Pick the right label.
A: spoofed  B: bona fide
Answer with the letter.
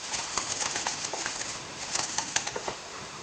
A